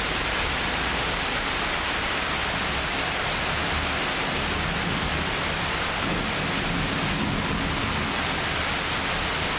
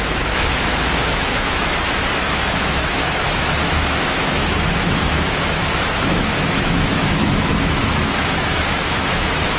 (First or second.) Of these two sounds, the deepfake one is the second